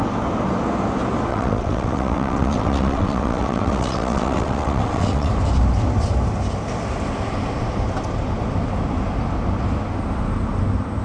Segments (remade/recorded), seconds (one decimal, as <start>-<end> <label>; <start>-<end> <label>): 0.0-1.3 recorded; 1.3-5.3 remade; 5.3-11.0 recorded